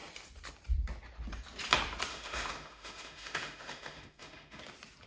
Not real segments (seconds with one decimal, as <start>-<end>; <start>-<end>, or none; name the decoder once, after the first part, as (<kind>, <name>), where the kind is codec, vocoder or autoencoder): 2.1-4.6 (autoencoder, DAC-VAE)